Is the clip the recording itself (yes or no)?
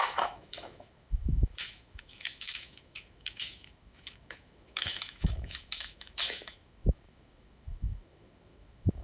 no